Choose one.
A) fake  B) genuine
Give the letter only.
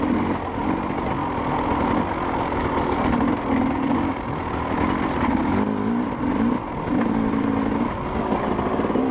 B